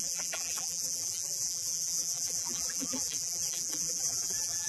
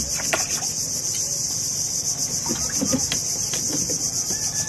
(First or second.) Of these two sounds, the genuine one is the second